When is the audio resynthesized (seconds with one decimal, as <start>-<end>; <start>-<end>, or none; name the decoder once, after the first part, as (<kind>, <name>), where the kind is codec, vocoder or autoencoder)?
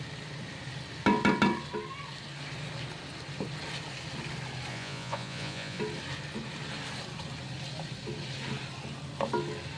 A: 4.7-5.8 (vocoder, Vocos)